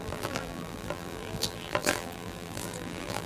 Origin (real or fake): fake